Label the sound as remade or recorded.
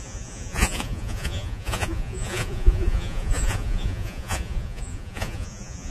remade